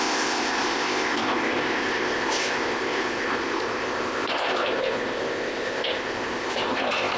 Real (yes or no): no